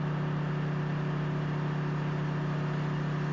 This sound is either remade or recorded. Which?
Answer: recorded